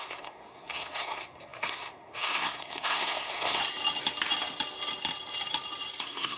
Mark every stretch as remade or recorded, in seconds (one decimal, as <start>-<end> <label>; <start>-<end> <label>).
0.0-3.6 remade; 3.6-6.0 recorded; 6.0-6.4 remade